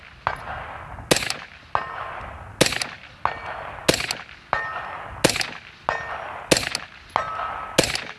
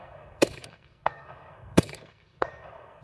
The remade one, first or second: second